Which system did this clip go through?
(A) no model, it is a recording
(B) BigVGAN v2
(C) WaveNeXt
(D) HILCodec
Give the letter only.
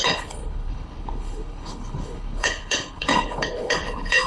D